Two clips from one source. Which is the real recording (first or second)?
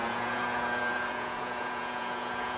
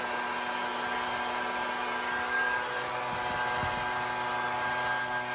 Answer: second